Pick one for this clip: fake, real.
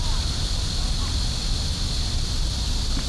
real